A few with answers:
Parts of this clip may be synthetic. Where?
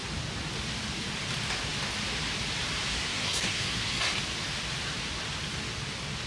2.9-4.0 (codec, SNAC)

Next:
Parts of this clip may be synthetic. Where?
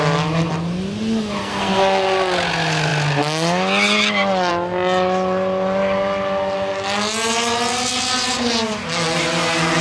1.4-2.0 (codec, SNAC)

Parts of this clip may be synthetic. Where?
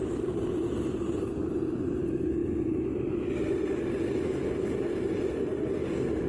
none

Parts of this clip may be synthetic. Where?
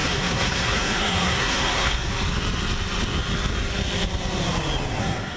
0.0-2.1 (codec, SNAC); 5.0-5.4